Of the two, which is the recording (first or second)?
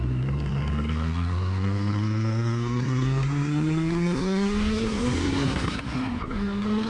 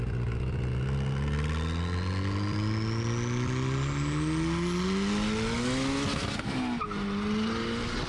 second